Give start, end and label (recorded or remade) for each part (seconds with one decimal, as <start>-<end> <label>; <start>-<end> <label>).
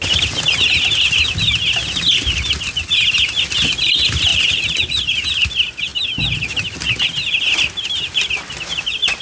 0.0-9.2 recorded